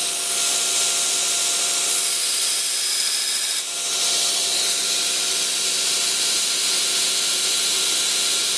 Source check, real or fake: real